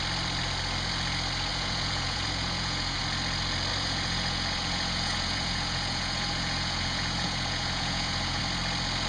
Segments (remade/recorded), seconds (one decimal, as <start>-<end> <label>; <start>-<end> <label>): 0.0-1.5 recorded; 1.5-3.0 remade; 3.0-3.7 recorded; 3.7-8.4 remade; 8.4-9.1 recorded

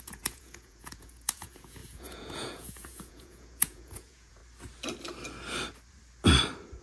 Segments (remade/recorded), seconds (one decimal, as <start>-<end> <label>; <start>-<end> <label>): 0.0-4.4 remade; 4.4-6.8 recorded

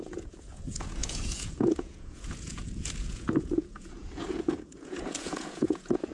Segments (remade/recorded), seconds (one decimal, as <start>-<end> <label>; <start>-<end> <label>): 0.0-6.1 remade

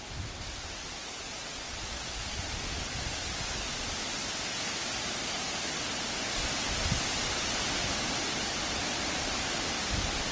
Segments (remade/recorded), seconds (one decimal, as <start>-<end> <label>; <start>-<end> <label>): 0.0-0.8 recorded; 0.8-2.8 remade; 2.8-10.3 recorded